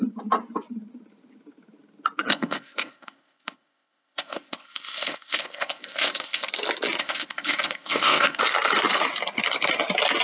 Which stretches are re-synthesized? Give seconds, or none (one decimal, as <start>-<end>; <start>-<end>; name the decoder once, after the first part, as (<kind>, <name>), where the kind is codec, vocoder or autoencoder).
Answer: 2.3-6.5 (codec, ZipCodec); 7.0-8.4